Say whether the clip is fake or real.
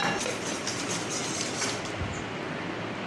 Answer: real